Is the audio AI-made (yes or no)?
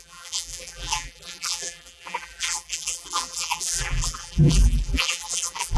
yes